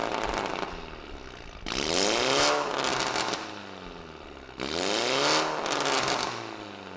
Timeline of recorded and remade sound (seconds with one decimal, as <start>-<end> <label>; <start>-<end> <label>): 0.0-7.0 recorded